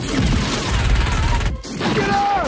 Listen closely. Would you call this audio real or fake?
real